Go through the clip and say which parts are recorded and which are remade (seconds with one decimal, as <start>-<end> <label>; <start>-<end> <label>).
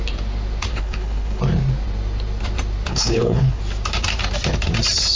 0.0-0.7 recorded; 0.7-1.4 remade; 1.4-2.9 recorded; 2.9-3.6 remade; 3.6-5.2 recorded